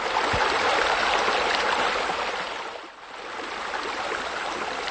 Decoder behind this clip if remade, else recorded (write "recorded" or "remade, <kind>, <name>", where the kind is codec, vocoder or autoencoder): recorded